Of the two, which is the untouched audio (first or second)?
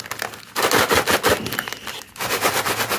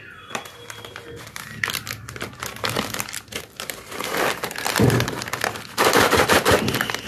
first